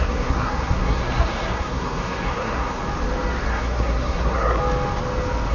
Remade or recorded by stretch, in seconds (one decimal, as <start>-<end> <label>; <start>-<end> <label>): 0.0-2.8 remade; 2.8-3.5 recorded; 3.5-4.6 remade; 4.6-5.5 recorded